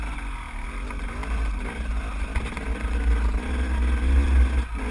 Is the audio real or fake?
real